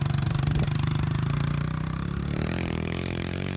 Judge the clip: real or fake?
fake